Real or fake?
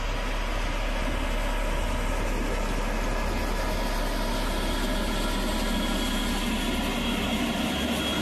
real